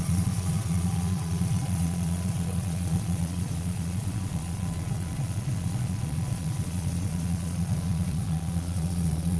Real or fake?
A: fake